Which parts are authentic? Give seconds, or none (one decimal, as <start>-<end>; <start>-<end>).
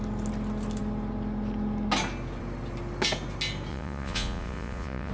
0.0-3.7